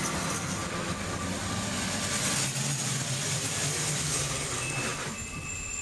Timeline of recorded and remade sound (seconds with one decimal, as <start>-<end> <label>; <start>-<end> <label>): 0.0-5.8 recorded